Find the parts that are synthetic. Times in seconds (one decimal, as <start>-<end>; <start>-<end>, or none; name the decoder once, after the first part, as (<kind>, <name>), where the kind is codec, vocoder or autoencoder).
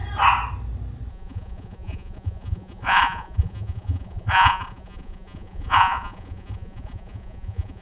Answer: 1.1-7.8 (vocoder, Vocos)